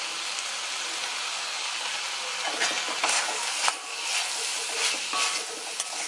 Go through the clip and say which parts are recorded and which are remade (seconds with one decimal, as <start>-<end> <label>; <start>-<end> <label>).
0.0-0.9 recorded; 0.9-2.0 remade; 2.0-3.0 recorded; 3.0-3.7 remade; 3.7-6.1 recorded